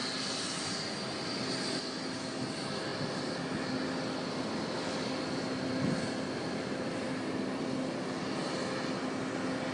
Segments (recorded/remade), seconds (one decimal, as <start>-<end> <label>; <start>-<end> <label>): 0.0-9.7 recorded